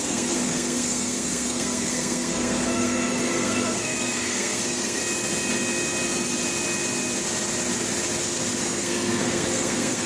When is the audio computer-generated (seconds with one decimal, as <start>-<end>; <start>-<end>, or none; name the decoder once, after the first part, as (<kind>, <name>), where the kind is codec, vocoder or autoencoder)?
0.0-5.0 (codec, SNAC); 8.6-10.1